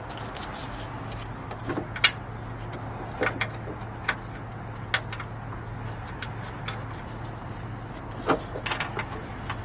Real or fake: real